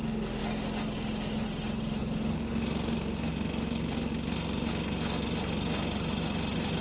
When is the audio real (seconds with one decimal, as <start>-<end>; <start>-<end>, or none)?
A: 0.0-6.8